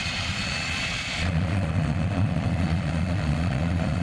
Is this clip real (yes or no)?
no